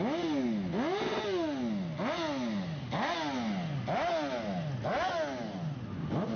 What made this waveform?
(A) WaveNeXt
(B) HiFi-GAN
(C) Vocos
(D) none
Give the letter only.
D